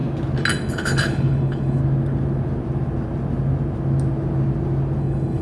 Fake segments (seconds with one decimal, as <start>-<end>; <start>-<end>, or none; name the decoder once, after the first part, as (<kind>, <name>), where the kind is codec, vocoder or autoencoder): 0.7-1.8 (codec, HILCodec); 5.0-5.4